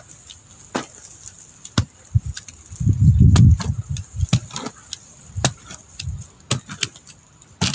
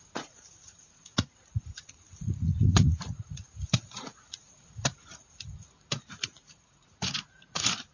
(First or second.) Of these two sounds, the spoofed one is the second